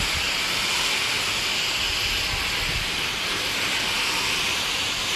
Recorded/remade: recorded